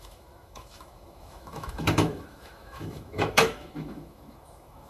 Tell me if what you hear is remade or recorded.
remade